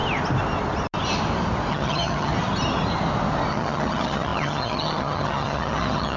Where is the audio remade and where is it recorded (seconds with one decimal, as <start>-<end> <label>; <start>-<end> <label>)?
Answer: 0.0-1.7 recorded; 1.7-2.3 remade; 2.3-3.5 recorded; 3.5-6.2 remade